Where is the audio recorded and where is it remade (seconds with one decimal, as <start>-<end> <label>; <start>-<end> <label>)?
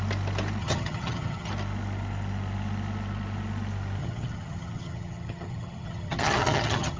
0.0-0.6 recorded; 0.6-1.5 remade; 1.5-4.0 recorded; 4.0-7.0 remade